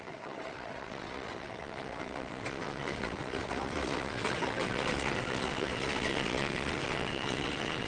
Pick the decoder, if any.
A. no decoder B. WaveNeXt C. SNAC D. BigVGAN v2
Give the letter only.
B